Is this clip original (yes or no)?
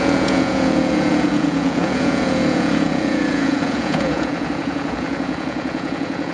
no